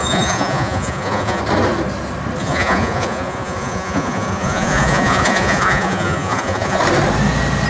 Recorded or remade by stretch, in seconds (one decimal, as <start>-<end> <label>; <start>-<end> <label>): 0.0-1.4 remade; 1.4-2.4 recorded; 2.4-6.8 remade; 6.8-7.7 recorded